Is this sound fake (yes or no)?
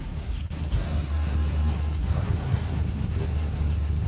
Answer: yes